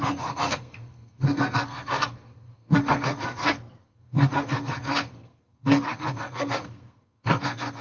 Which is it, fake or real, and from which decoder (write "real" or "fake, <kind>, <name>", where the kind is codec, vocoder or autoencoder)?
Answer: fake, codec, SNAC